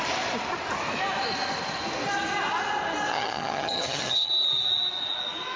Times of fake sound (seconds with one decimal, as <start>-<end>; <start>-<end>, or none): 3.1-4.3